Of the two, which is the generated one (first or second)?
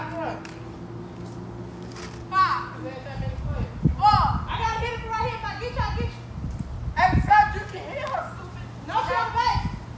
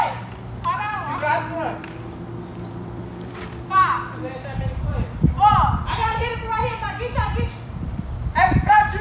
second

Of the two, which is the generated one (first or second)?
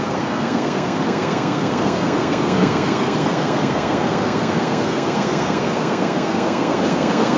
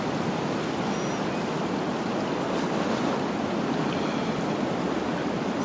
first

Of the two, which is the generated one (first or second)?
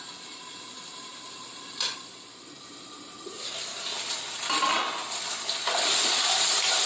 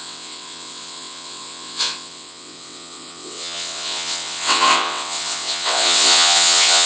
second